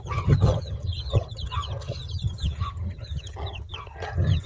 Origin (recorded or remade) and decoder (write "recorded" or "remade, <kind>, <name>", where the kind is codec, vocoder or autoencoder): remade, vocoder, HiFi-GAN